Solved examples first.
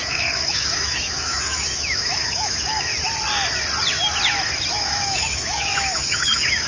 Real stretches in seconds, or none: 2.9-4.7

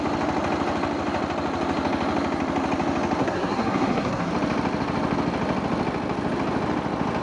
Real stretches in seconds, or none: 0.0-3.2; 4.3-7.2